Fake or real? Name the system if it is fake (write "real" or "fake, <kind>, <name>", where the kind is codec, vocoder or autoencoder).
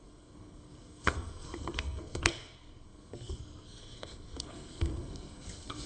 fake, codec, SNAC